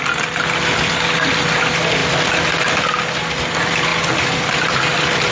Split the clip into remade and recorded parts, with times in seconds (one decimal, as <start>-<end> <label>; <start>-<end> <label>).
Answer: 0.0-5.3 recorded